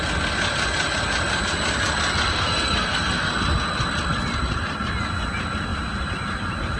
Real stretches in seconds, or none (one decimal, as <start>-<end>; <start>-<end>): 0.0-2.3; 3.3-6.8